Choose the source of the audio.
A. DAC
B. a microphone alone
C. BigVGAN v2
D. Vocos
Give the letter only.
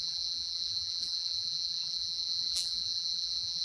C